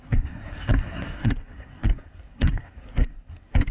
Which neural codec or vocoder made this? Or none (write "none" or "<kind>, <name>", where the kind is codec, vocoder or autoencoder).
codec, SNAC